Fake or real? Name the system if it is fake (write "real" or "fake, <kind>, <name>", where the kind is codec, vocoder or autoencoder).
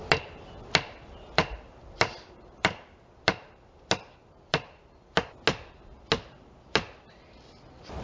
real